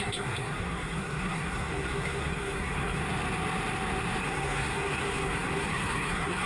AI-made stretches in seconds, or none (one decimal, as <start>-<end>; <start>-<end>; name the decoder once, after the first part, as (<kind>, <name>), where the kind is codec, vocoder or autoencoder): 0.0-3.0 (codec, SNAC); 4.2-6.5